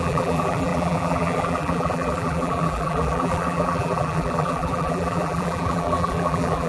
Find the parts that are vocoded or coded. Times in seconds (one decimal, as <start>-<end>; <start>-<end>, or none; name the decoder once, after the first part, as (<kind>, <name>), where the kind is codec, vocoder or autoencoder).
0.0-6.7 (vocoder, BigVGAN v2)